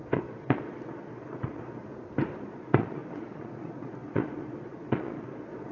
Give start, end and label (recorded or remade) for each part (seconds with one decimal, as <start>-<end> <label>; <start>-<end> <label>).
0.0-1.8 remade; 1.8-2.4 recorded; 2.4-5.7 remade